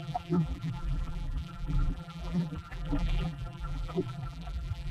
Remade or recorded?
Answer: remade